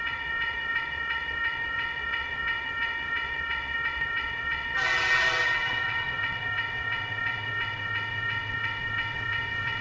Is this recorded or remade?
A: remade